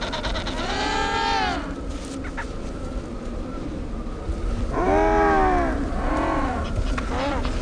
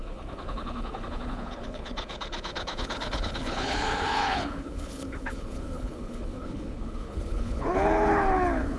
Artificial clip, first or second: second